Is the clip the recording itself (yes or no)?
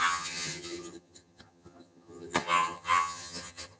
no